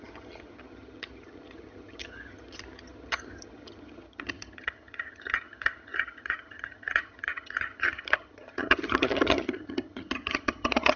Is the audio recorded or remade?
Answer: remade